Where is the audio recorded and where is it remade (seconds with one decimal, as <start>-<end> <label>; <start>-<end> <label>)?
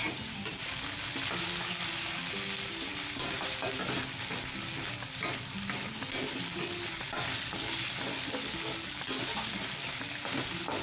0.0-10.8 recorded